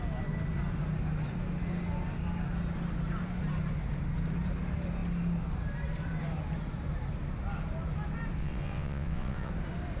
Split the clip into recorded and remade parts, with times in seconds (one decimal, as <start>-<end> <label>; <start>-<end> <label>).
0.0-8.4 recorded; 8.4-9.5 remade; 9.5-10.0 recorded